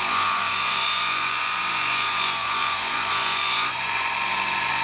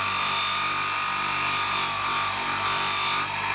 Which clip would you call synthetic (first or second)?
first